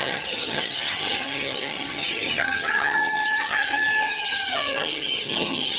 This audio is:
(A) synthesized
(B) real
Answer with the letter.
A